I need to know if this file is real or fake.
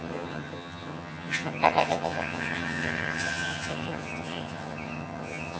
fake